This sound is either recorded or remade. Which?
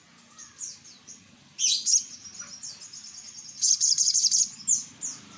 recorded